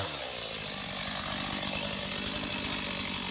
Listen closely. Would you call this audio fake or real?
real